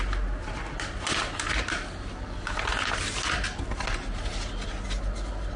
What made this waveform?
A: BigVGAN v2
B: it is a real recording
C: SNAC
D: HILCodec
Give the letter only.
B